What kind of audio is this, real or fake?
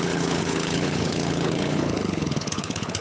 fake